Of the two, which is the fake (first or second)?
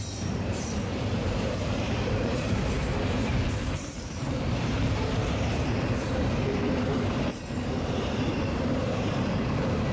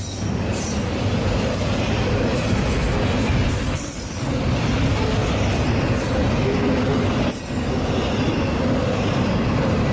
first